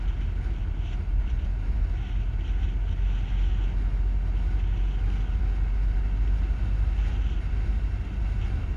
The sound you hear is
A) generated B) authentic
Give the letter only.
B